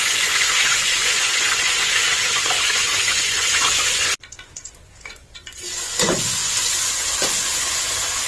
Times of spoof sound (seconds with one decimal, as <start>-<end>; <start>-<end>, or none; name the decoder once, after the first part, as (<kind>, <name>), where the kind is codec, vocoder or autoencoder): 0.0-8.3 (vocoder, Vocos)